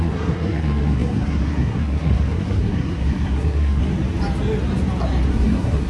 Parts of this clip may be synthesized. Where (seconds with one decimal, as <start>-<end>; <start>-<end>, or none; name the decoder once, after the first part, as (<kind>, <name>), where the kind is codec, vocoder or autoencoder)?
0.0-3.8 (codec, SNAC); 5.3-5.9